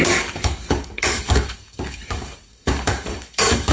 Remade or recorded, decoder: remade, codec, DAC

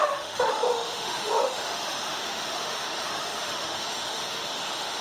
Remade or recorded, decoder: remade, autoencoder, DAC-VAE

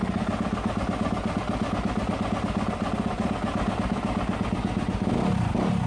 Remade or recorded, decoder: recorded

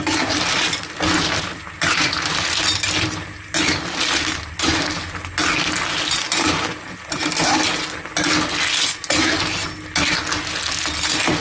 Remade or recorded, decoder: recorded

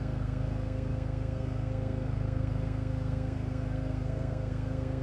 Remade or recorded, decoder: remade, codec, SNAC